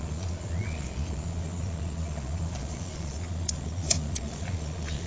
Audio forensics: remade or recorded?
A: remade